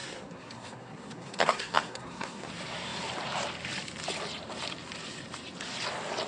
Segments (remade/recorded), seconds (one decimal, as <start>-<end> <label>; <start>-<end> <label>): 0.0-2.5 remade; 2.5-6.3 recorded